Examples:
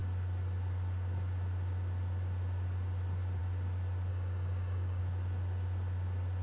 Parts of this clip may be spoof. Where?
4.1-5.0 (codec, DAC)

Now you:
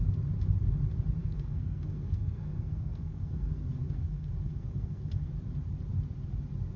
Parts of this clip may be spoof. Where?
1.2-5.3 (codec, SNAC)

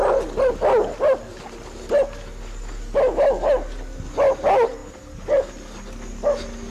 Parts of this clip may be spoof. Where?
none